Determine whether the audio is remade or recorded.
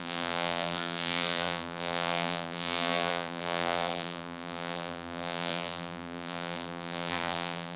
remade